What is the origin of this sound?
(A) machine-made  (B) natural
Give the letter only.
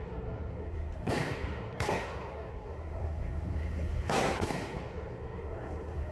A